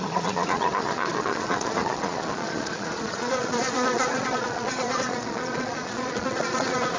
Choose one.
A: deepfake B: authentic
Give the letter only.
A